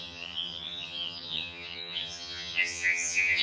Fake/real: fake